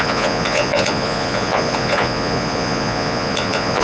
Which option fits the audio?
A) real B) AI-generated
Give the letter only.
B